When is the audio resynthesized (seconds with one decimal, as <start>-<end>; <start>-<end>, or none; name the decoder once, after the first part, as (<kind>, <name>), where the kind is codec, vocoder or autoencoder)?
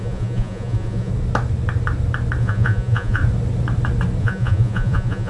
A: 0.0-1.1 (vocoder, Vocos); 2.4-3.2; 4.2-5.3